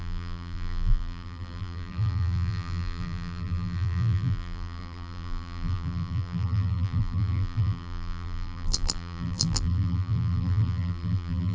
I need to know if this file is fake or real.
fake